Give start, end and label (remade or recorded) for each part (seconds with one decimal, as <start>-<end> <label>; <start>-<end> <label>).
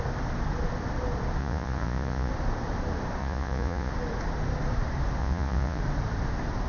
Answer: 0.0-1.4 recorded; 1.4-2.3 remade; 2.3-3.2 recorded; 3.2-3.9 remade; 3.9-5.2 recorded; 5.2-5.8 remade; 5.8-6.7 recorded